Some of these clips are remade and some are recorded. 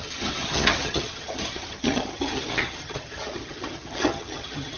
remade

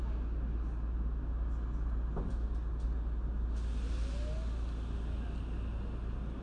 recorded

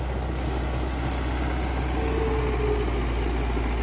recorded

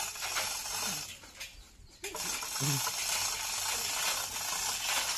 recorded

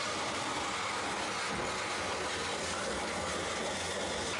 recorded